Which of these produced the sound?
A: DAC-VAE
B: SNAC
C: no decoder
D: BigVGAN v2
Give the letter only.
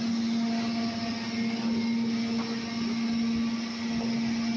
C